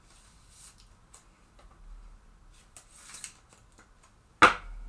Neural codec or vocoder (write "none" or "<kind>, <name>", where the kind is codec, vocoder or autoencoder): none